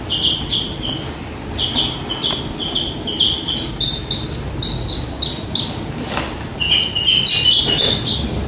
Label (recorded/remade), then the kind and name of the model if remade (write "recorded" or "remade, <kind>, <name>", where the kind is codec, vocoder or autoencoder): recorded